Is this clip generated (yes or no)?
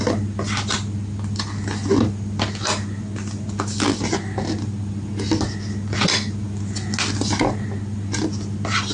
no